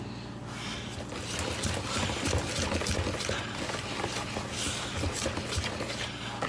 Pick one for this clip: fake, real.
real